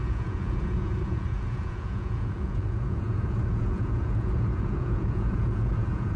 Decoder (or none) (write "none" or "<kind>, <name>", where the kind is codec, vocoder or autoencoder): vocoder, Vocos